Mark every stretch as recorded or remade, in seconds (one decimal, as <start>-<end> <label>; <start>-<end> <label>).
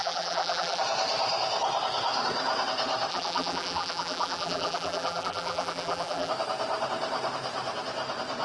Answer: 0.0-0.8 remade; 0.8-3.1 recorded; 3.1-6.3 remade; 6.3-8.4 recorded